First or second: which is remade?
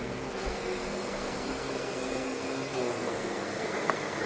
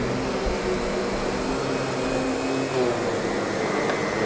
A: first